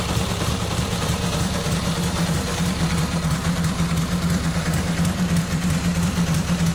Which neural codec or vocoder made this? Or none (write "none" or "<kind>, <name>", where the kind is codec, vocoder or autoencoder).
vocoder, BigVGAN v2